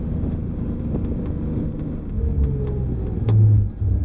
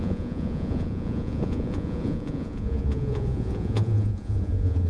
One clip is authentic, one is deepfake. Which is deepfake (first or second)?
second